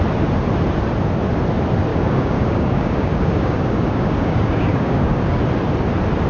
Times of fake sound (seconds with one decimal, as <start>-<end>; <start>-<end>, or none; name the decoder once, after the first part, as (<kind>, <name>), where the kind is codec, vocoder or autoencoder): 1.9-5.4 (codec, DAC)